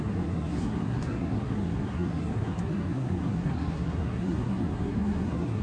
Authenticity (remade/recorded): remade